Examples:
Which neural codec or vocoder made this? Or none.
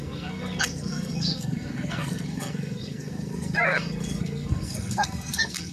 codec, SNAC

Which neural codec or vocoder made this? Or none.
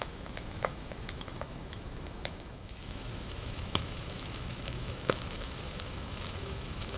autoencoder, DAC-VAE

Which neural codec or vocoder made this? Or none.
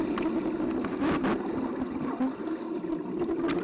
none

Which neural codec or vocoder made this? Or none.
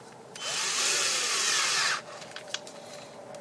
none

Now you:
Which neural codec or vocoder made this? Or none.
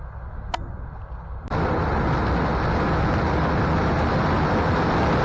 none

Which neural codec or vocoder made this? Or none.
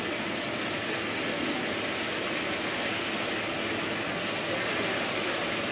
none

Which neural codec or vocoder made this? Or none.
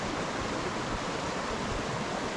none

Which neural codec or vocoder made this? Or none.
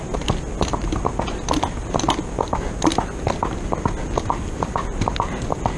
none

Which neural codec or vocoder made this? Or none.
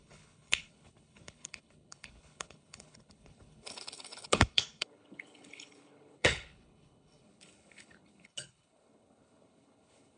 codec, HILCodec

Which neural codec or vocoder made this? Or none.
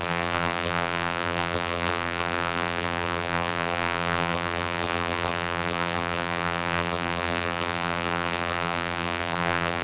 vocoder, BigVGAN v2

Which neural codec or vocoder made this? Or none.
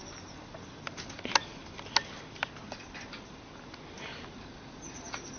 none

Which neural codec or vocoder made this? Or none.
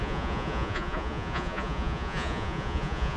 vocoder, Vocos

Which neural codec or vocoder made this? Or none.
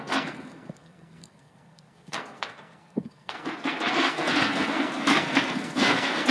codec, SNAC